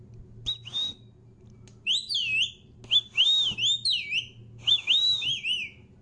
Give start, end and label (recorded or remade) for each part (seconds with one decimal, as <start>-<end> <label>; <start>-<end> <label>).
0.0-6.0 recorded

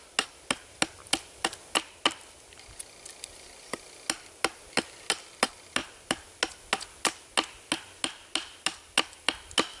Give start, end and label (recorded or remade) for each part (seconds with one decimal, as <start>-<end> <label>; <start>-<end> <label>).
0.0-9.8 recorded

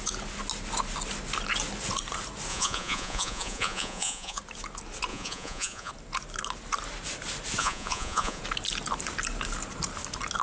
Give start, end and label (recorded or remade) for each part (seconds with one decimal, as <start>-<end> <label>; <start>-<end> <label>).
0.0-2.5 recorded; 2.5-4.4 remade; 4.4-5.1 recorded; 5.1-5.9 remade; 5.9-7.6 recorded; 7.6-8.4 remade; 8.4-10.4 recorded